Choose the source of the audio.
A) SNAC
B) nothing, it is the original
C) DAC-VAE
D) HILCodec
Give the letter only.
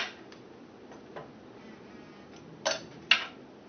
B